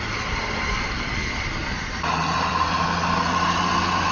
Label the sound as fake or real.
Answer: real